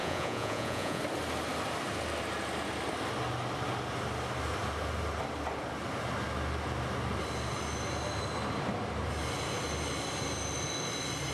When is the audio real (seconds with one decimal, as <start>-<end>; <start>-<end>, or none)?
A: 1.0-11.3